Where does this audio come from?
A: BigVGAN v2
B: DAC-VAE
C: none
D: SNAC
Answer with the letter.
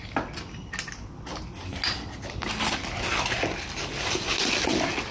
C